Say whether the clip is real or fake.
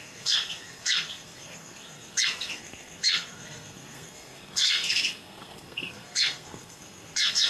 fake